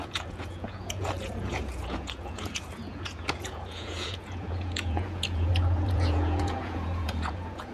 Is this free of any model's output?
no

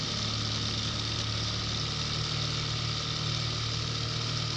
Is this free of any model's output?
yes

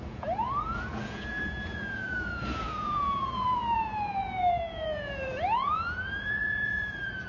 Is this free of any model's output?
no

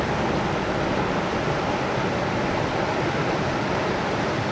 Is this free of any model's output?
yes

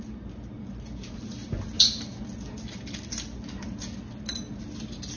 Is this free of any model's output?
yes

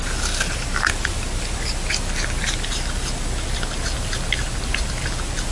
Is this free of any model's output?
yes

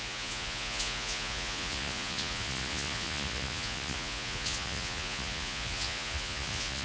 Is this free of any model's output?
no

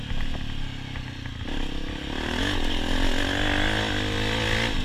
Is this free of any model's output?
yes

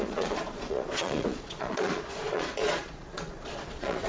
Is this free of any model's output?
no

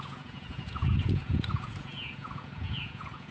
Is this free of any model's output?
no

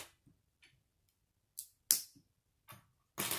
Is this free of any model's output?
yes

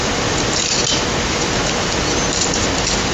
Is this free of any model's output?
yes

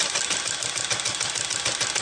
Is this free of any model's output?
yes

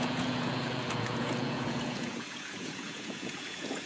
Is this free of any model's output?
no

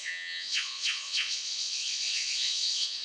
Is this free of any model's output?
no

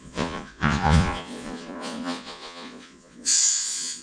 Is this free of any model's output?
no